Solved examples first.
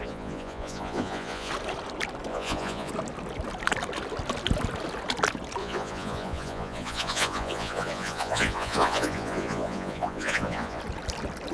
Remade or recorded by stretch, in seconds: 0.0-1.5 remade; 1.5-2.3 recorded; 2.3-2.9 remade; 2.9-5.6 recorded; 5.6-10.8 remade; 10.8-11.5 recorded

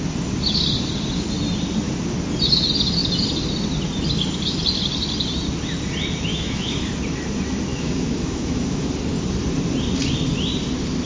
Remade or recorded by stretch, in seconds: 0.0-6.3 recorded; 6.3-6.9 remade; 6.9-7.7 recorded; 7.7-8.9 remade; 8.9-11.1 recorded

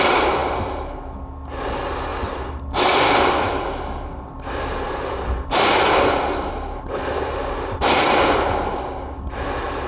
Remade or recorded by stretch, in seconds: 0.0-2.1 recorded; 2.1-6.5 remade; 6.5-9.9 recorded

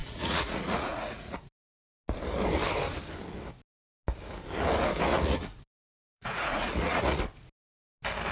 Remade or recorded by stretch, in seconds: 0.0-1.7 remade; 1.7-5.1 recorded; 5.1-7.2 remade; 7.2-8.3 recorded